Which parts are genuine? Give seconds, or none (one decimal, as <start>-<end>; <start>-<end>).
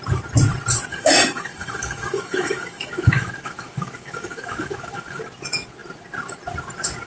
0.0-0.9; 5.2-7.1